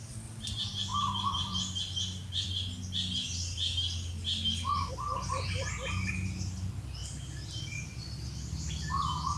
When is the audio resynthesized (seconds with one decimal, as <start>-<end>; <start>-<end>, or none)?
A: none